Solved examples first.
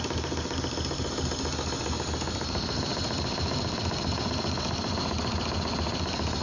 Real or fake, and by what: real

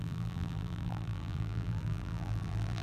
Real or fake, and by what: fake, vocoder, BigVGAN v2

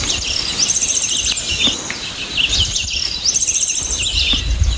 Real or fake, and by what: real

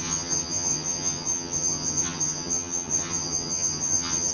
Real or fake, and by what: fake, vocoder, HiFi-GAN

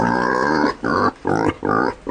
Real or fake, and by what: real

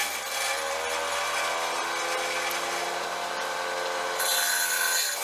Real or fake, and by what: real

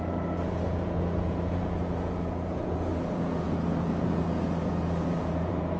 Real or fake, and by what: fake, vocoder, Vocos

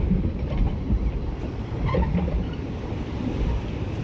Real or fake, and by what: real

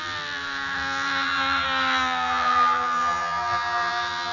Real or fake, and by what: fake, vocoder, BigVGAN v2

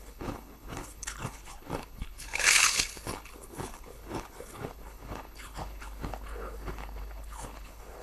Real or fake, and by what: fake, codec, HILCodec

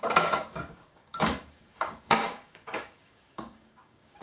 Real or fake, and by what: fake, codec, DAC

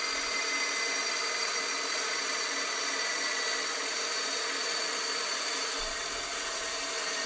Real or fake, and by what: real